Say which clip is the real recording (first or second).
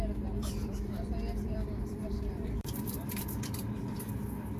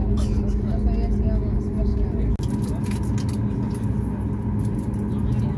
second